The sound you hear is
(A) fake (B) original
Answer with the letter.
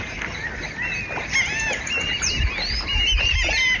B